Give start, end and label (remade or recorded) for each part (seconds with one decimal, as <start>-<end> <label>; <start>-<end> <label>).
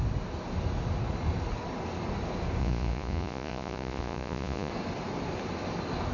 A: 0.0-2.6 recorded; 2.6-4.7 remade; 4.7-6.1 recorded